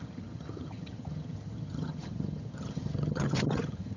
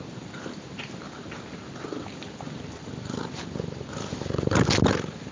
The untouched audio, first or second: second